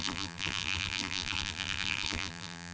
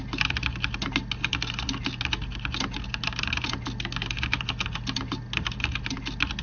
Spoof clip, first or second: first